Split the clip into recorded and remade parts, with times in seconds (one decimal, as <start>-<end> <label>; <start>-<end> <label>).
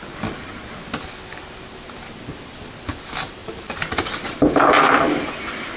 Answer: 0.0-5.8 recorded